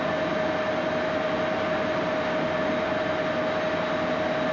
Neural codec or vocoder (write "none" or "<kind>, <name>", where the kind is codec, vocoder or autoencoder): none